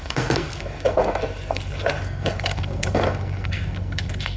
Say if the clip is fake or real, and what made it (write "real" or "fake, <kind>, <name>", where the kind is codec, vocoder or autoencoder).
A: fake, codec, SNAC